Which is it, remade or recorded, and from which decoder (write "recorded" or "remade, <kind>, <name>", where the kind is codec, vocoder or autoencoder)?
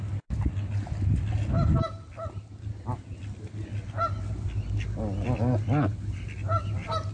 recorded